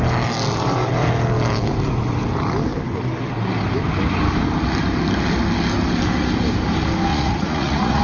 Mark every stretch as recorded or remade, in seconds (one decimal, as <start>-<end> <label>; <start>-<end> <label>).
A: 0.0-7.1 recorded; 7.1-8.0 remade